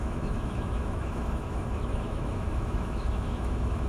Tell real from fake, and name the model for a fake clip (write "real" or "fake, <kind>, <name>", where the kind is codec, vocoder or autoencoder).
fake, autoencoder, DAC-VAE